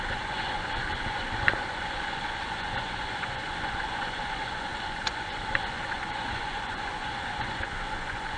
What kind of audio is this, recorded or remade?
remade